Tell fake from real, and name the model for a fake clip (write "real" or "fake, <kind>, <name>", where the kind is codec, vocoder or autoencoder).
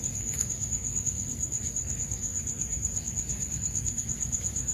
fake, codec, SNAC